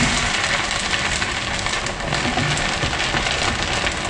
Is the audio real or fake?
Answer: real